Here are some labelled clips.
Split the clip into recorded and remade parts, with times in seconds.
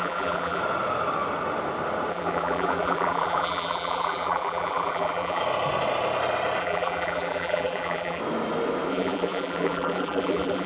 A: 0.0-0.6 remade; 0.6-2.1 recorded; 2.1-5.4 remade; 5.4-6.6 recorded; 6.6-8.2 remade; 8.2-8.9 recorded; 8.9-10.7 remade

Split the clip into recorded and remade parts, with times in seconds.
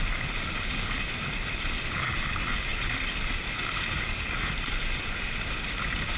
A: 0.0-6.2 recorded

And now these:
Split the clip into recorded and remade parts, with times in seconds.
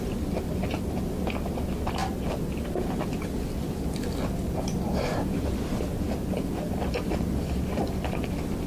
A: 0.0-8.7 recorded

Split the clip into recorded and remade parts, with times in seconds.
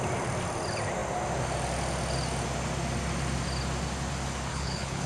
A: 0.0-4.5 recorded; 4.5-5.1 remade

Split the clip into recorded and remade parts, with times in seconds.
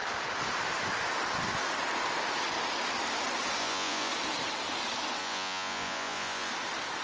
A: 0.0-3.6 recorded; 3.6-4.1 remade; 4.1-5.2 recorded; 5.2-6.5 remade; 6.5-7.0 recorded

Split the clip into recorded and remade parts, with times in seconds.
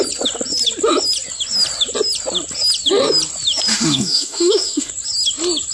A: 0.0-3.7 recorded; 3.7-4.9 remade; 4.9-5.7 recorded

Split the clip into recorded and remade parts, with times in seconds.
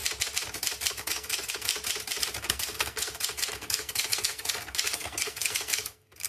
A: 0.0-0.9 recorded; 0.9-1.7 remade; 1.7-2.4 recorded; 2.4-6.3 remade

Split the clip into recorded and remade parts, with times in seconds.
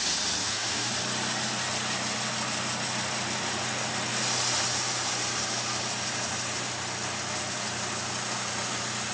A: 0.0-0.4 recorded; 0.4-0.9 remade; 0.9-9.1 recorded